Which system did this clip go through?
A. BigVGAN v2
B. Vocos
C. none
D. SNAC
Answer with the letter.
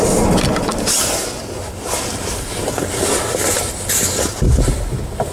C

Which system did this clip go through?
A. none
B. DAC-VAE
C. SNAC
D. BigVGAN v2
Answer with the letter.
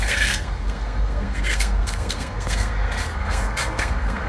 C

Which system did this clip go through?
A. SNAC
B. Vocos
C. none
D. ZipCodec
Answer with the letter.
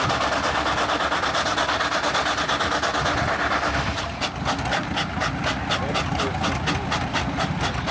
C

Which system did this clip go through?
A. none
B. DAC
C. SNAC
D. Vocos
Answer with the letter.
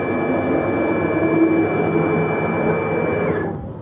A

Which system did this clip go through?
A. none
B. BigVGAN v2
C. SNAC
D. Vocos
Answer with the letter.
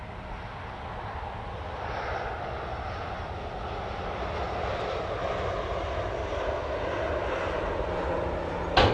A